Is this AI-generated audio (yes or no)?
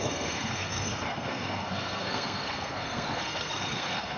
yes